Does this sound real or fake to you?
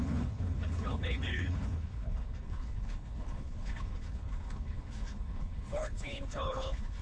fake